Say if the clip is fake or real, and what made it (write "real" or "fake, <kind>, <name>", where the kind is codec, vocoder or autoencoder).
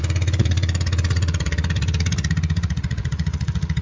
fake, vocoder, Vocos